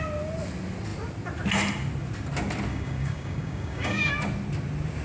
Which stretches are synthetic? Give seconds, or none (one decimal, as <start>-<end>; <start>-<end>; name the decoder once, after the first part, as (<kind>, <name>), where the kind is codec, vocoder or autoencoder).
2.7-4.1 (codec, DAC)